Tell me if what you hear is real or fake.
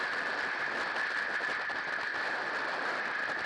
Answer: real